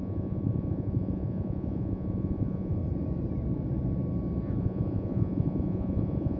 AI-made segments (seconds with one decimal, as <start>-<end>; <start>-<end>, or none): 0.0-2.8; 4.6-6.4